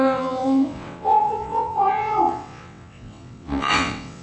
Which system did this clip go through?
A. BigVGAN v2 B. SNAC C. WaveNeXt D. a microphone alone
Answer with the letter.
C